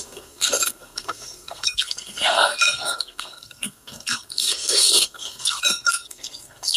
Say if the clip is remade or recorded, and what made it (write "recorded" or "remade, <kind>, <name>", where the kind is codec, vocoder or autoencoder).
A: remade, codec, SNAC